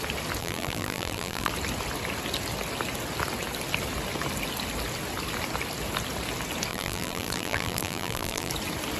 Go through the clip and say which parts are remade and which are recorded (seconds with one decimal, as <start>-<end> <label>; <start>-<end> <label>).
0.0-0.4 recorded; 0.4-1.5 remade; 1.5-6.7 recorded; 6.7-8.5 remade; 8.5-9.0 recorded